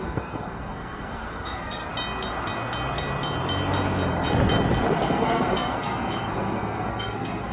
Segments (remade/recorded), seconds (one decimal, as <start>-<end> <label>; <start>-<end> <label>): 0.0-1.9 remade; 1.9-5.1 recorded; 5.1-7.5 remade